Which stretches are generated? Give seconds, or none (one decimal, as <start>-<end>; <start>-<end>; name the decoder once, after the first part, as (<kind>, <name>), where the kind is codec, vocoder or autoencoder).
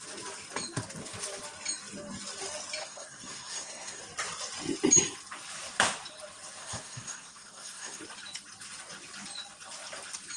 2.8-4.0 (codec, SNAC); 6.6-8.0